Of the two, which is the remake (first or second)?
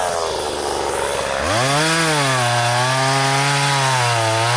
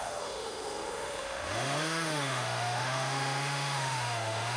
second